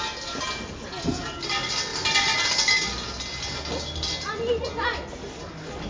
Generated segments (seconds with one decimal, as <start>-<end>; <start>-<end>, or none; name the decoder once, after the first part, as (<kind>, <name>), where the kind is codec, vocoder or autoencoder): none